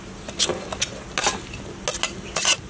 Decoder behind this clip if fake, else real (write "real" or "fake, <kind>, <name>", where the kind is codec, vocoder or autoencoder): real